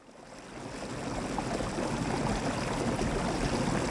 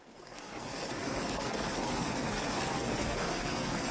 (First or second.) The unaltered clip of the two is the first